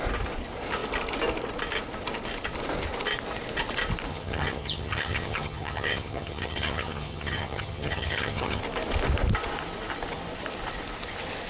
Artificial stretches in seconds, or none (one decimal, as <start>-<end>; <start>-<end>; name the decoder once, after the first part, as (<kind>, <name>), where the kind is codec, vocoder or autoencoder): 4.1-8.6 (vocoder, HiFi-GAN)